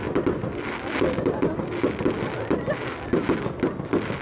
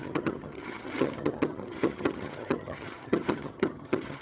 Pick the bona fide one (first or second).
first